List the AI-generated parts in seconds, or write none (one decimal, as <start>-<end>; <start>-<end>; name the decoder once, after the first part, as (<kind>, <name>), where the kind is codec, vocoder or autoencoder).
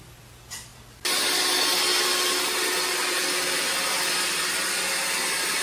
none